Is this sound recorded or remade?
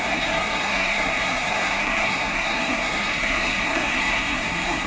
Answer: remade